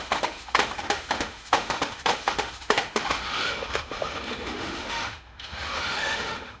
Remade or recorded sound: remade